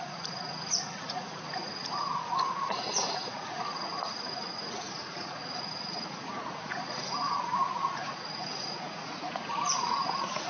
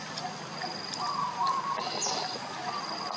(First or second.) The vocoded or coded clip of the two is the first